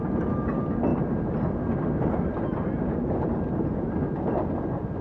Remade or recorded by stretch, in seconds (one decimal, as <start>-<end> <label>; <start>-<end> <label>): 0.0-5.0 recorded

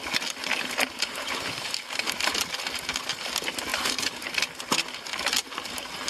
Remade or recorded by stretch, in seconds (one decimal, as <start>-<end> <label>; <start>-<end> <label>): 0.0-0.4 recorded; 0.4-2.1 remade; 2.1-3.7 recorded; 3.7-4.4 remade; 4.4-6.1 recorded

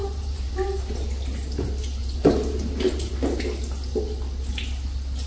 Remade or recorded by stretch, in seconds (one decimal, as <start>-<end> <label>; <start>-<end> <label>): 0.0-0.5 remade; 0.5-2.0 recorded; 2.0-3.1 remade; 3.1-5.3 recorded

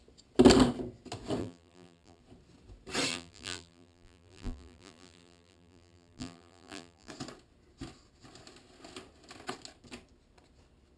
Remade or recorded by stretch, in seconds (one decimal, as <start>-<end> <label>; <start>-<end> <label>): 0.0-1.4 recorded; 1.4-2.2 remade; 2.2-3.1 recorded; 3.1-7.1 remade; 7.1-11.0 recorded

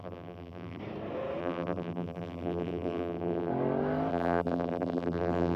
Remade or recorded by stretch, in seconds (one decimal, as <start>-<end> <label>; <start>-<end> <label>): 0.0-0.8 remade; 0.8-1.4 recorded; 1.4-3.5 remade; 3.5-4.1 recorded; 4.1-5.6 remade

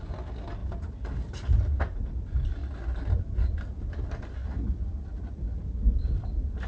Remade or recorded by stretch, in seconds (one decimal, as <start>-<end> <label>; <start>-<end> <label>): 0.0-6.7 recorded